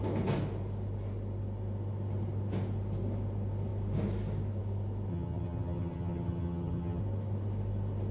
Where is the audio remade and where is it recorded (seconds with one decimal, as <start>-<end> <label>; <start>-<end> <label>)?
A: 0.0-5.1 recorded; 5.1-7.0 remade; 7.0-8.1 recorded